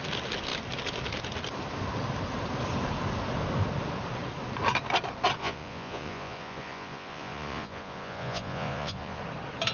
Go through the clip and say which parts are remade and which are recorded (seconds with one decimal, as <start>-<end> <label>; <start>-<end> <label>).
0.0-5.4 recorded; 5.4-9.2 remade; 9.2-9.7 recorded